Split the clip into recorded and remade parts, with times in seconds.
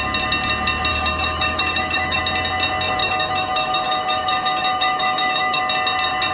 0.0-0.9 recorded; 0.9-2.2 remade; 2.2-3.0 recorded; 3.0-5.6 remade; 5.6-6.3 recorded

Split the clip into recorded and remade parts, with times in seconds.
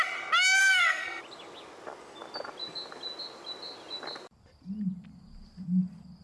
0.0-0.6 recorded; 0.6-1.2 remade; 1.2-6.2 recorded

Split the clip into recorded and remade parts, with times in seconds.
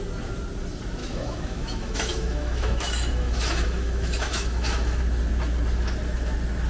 0.0-1.0 recorded; 1.0-5.0 remade; 5.0-6.7 recorded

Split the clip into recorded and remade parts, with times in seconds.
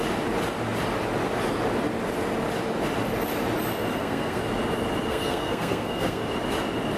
0.0-3.9 recorded; 3.9-4.4 remade; 4.4-5.1 recorded; 5.1-6.2 remade; 6.2-7.0 recorded